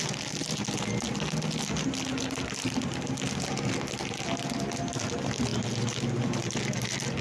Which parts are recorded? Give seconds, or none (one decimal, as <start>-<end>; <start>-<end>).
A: 0.0-7.2